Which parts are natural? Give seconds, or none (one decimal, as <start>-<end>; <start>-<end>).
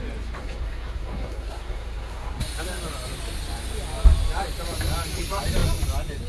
0.0-0.4; 2.4-6.3